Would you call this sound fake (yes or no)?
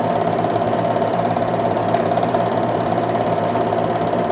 yes